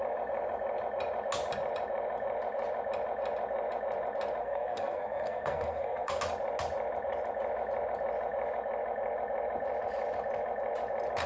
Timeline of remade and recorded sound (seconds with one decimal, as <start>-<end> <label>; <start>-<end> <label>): 0.0-4.4 recorded; 4.4-6.2 remade; 6.2-11.3 recorded